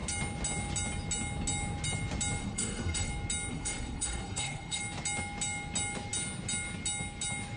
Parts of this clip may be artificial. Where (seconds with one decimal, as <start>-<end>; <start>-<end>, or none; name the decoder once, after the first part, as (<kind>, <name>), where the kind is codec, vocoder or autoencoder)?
2.4-3.1 (codec, SNAC); 3.5-4.8